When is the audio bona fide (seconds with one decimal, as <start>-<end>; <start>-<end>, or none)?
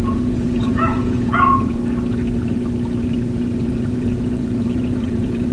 1.8-3.6